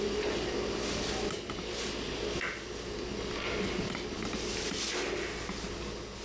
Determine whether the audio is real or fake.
real